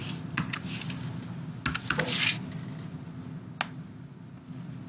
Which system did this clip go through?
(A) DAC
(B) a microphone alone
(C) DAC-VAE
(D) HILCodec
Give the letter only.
B